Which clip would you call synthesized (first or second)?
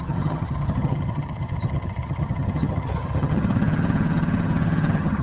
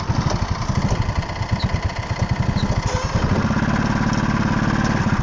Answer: first